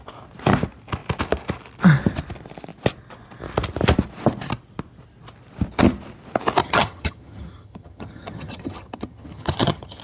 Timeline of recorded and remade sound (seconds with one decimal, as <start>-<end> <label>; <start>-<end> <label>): 0.0-6.6 recorded; 6.6-10.0 remade